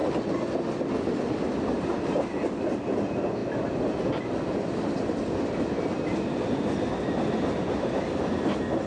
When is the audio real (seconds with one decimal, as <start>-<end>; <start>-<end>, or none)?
0.0-8.9